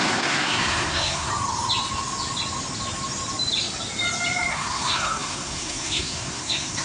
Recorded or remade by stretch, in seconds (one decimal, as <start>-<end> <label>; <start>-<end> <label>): 0.0-1.3 remade; 1.3-4.5 recorded; 4.5-6.8 remade